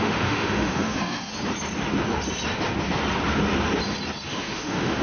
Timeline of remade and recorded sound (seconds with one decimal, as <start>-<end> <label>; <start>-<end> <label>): 0.0-1.3 remade; 1.3-4.3 recorded; 4.3-5.0 remade